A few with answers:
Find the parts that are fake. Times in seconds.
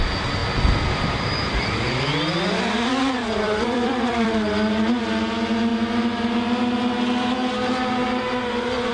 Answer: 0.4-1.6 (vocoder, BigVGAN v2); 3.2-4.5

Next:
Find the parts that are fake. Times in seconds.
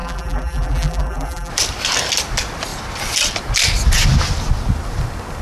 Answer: 0.0-1.5 (vocoder, BigVGAN v2)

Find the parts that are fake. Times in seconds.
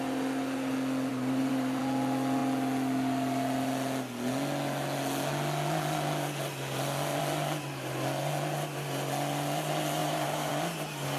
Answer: 1.1-1.8 (vocoder, BigVGAN v2); 10.0-10.5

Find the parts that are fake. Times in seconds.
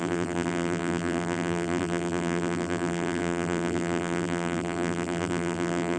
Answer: 0.0-6.0 (vocoder, BigVGAN v2)